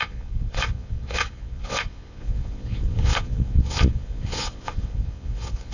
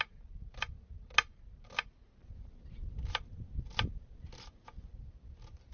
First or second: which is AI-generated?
first